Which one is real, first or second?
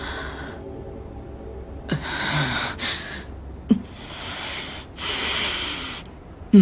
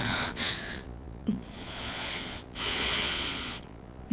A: first